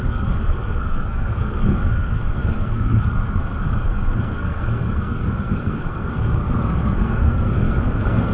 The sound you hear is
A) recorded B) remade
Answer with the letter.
B